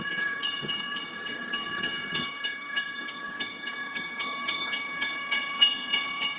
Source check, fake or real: fake